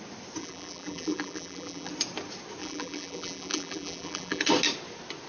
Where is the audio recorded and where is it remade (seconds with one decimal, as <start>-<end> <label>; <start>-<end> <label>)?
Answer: 0.0-0.4 recorded; 0.4-1.9 remade; 1.9-2.6 recorded; 2.6-4.4 remade; 4.4-5.3 recorded